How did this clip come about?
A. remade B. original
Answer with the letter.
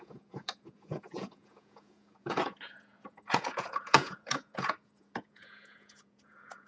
A